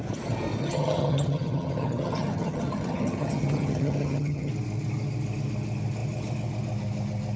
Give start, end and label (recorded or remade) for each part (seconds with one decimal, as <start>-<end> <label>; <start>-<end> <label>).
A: 0.0-0.6 recorded; 0.6-4.5 remade; 4.5-7.4 recorded